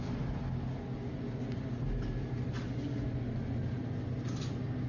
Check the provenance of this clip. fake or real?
real